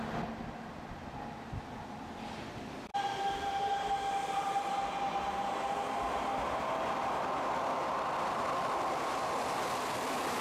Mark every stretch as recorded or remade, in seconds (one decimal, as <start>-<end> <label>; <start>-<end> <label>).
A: 0.0-10.4 recorded